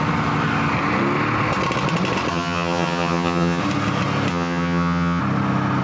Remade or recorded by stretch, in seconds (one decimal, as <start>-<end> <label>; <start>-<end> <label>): 0.0-2.3 recorded; 2.3-3.6 remade; 3.6-4.3 recorded; 4.3-5.2 remade; 5.2-5.8 recorded